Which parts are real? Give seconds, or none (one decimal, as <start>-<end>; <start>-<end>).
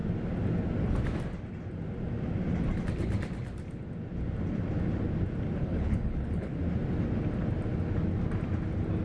0.0-5.6; 6.6-9.0